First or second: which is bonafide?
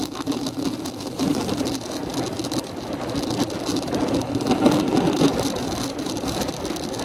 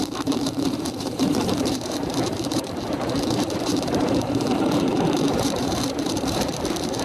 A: first